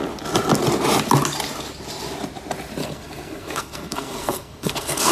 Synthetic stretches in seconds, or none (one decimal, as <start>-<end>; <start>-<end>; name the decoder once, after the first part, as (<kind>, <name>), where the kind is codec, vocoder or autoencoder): 2.8-5.1 (codec, SNAC)